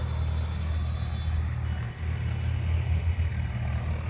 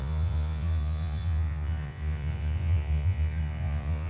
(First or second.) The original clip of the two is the first